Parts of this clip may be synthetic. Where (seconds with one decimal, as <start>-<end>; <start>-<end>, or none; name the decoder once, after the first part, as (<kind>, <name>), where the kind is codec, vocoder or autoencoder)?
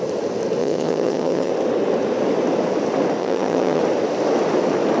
0.6-1.5 (vocoder, HiFi-GAN); 3.2-3.8